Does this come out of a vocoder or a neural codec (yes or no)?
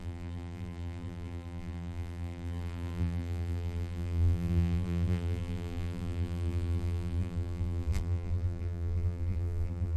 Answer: yes